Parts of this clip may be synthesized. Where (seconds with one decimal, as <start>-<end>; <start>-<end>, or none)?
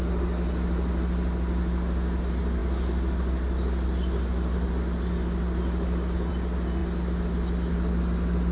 none